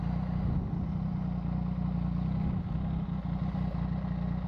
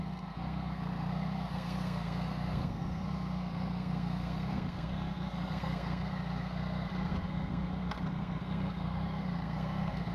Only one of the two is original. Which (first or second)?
first